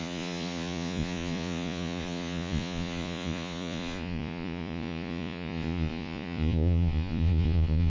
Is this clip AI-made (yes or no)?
yes